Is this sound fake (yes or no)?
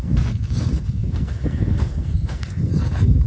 yes